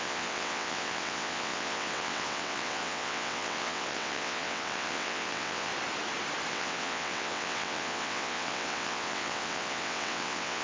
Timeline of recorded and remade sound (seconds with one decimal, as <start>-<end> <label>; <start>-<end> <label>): 0.0-5.7 remade; 5.7-6.5 recorded; 6.5-10.6 remade